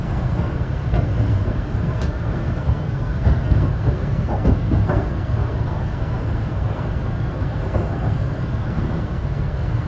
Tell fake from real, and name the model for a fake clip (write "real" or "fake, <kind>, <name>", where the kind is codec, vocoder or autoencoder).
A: fake, codec, SNAC